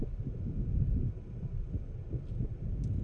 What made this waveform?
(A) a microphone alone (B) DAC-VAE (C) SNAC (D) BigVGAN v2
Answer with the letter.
A